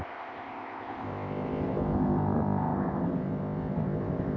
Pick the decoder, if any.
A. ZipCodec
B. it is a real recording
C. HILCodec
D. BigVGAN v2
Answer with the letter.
A